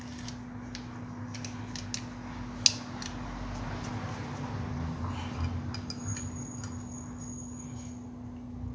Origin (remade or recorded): recorded